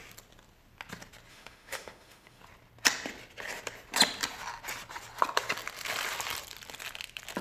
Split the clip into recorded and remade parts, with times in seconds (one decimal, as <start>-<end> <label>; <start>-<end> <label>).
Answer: 0.0-1.3 recorded; 1.3-2.4 remade; 2.4-7.4 recorded